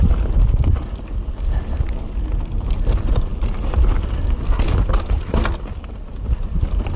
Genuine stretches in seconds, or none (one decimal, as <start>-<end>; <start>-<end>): 0.0-7.0

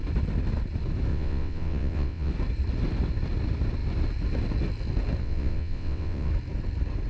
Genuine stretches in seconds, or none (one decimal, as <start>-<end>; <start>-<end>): 0.0-1.1; 2.3-5.2; 6.3-7.1

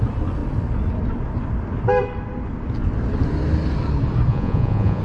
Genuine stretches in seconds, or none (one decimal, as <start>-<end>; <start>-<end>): 0.0-4.3